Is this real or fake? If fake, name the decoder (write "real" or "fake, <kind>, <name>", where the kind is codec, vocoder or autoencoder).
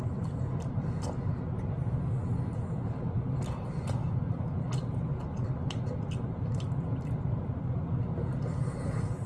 real